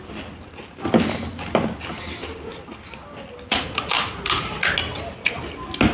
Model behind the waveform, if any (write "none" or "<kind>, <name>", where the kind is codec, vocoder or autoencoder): none